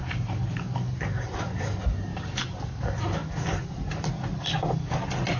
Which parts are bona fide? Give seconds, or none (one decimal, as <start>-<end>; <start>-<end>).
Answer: 0.0-2.1; 2.7-5.4